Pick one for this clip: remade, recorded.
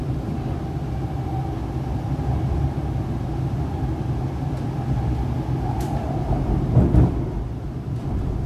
recorded